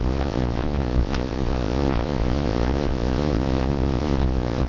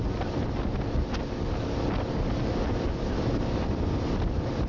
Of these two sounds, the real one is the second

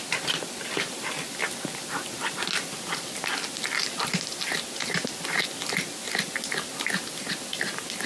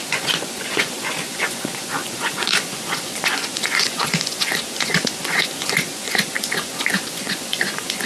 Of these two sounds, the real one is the first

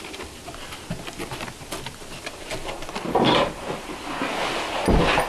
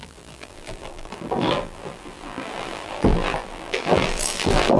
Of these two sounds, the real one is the first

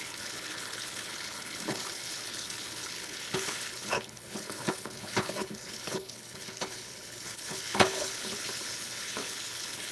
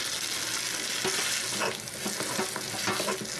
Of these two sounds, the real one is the second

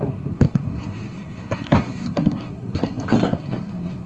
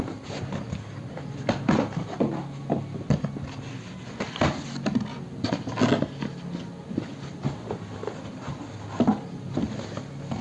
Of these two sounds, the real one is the second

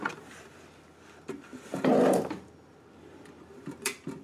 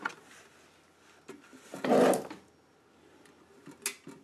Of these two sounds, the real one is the second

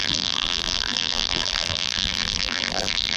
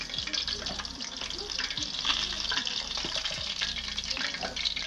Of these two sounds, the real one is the second